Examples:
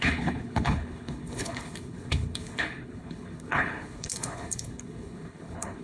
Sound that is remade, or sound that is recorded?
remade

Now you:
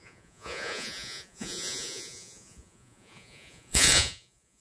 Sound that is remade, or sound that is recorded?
remade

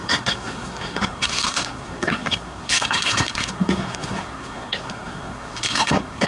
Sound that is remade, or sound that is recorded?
remade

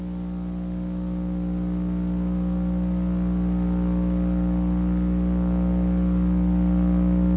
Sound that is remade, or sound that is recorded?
recorded